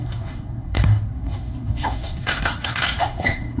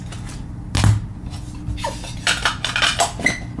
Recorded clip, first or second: second